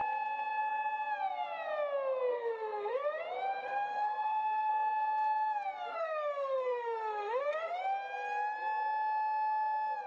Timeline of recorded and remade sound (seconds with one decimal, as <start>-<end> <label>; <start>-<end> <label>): 0.0-2.3 recorded; 2.3-3.2 remade; 3.2-3.6 recorded; 3.6-4.7 remade; 4.7-5.9 recorded; 5.9-7.8 remade; 7.8-10.1 recorded